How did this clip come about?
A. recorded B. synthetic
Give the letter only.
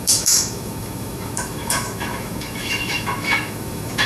B